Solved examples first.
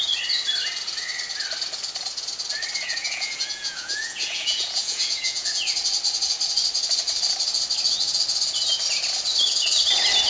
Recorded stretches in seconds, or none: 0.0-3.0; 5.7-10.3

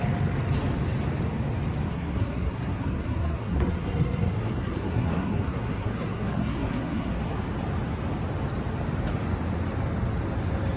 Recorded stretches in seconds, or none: 0.0-1.9; 7.2-10.8

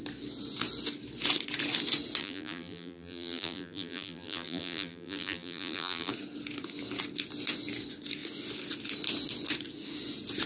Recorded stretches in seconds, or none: 0.0-2.2; 6.1-10.5

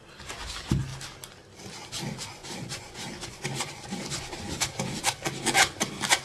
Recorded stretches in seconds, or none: 0.0-2.4; 5.1-6.2

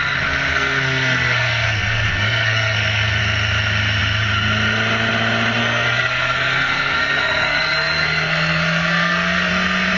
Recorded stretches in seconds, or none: 0.0-0.5; 3.2-5.6; 9.5-10.0